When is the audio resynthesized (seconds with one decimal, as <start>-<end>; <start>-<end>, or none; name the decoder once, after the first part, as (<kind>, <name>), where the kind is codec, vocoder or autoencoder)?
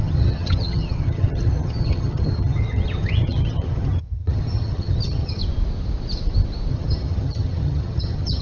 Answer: 0.0-5.4 (vocoder, HiFi-GAN); 6.7-8.4